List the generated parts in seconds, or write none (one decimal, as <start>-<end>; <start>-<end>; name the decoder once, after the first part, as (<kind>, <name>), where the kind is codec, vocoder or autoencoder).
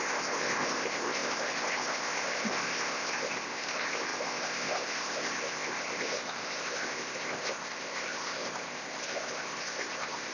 0.0-10.3 (codec, ZipCodec)